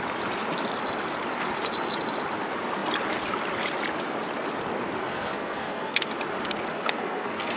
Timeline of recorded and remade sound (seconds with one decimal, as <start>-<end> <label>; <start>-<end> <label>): 0.0-5.0 recorded; 5.0-6.1 remade; 6.1-6.7 recorded; 6.7-7.6 remade

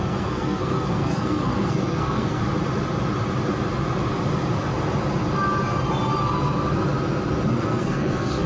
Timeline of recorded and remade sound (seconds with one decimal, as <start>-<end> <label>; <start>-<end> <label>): 0.0-2.4 remade; 2.4-7.5 recorded; 7.5-8.5 remade

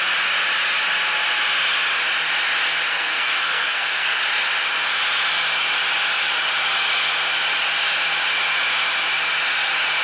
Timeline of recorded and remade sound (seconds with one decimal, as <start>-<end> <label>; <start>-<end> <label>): 0.0-2.9 recorded; 2.9-4.2 remade; 4.2-10.0 recorded

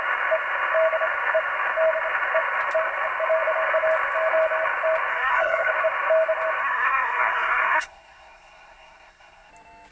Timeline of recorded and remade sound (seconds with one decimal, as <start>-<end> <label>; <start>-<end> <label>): 0.0-5.1 recorded; 5.1-5.7 remade; 5.7-6.6 recorded; 6.6-9.5 remade; 9.5-9.9 recorded

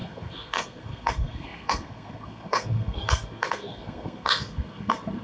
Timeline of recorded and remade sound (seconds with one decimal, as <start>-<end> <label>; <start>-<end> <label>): 0.0-5.2 remade

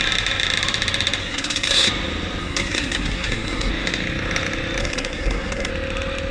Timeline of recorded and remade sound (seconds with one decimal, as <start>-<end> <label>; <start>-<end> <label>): 0.0-1.2 recorded; 1.2-1.9 remade; 1.9-2.4 recorded; 2.4-3.7 remade; 3.7-4.8 recorded; 4.8-5.7 remade; 5.7-6.3 recorded

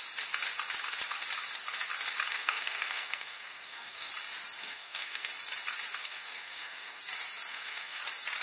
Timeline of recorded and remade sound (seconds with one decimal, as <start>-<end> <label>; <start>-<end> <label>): 0.0-2.3 recorded; 2.3-4.1 remade; 4.1-4.6 recorded; 4.6-5.3 remade; 5.3-6.0 recorded; 6.0-7.0 remade; 7.0-7.5 recorded; 7.5-8.0 remade; 8.0-8.4 recorded

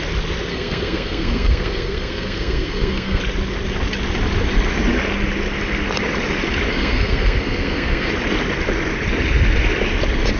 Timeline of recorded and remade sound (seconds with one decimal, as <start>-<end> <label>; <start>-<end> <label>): 0.0-0.5 recorded; 0.5-3.2 remade; 3.2-6.7 recorded; 6.7-8.1 remade; 8.1-10.4 recorded